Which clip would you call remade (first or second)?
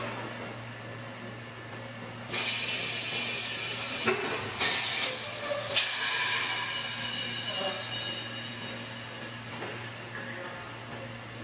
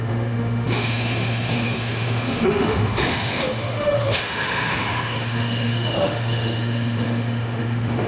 second